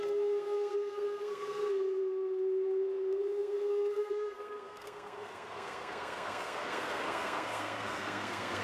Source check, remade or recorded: remade